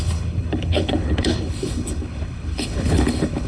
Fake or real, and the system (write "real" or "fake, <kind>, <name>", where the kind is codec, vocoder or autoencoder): fake, codec, HILCodec